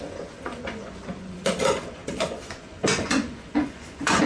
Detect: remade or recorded remade